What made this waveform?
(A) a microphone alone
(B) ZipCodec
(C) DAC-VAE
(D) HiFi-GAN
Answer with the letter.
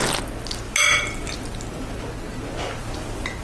A